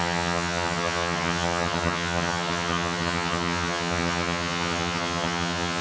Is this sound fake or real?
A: fake